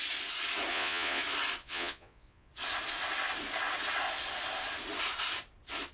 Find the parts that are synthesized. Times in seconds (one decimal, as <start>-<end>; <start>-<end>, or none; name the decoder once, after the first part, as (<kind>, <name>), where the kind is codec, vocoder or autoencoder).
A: 0.7-1.2 (vocoder, Vocos); 1.6-2.5

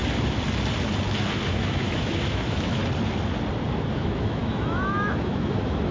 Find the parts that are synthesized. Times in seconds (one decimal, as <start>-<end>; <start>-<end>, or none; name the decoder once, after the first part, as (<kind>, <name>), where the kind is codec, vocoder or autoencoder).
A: 1.5-2.8 (autoencoder, DAC-VAE); 3.9-5.9